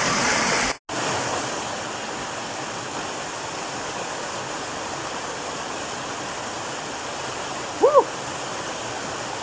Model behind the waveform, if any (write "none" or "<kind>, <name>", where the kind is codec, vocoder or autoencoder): none